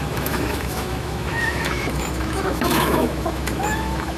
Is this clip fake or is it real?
fake